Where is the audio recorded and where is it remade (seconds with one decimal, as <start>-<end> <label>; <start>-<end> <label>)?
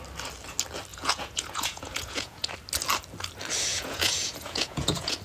0.0-0.9 recorded; 0.9-2.5 remade; 2.5-3.7 recorded; 3.7-5.2 remade